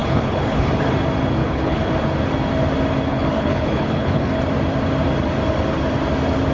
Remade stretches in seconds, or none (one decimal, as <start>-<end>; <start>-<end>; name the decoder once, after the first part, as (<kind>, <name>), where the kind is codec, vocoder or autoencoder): 0.0-0.7 (codec, HILCodec); 1.4-1.9; 3.1-4.4